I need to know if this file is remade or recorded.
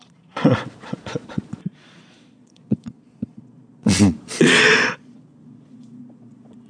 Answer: remade